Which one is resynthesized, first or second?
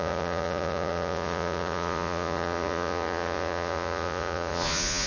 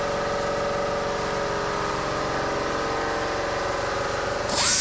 first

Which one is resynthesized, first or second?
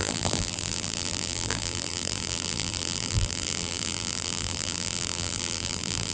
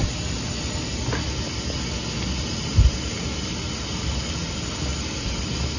first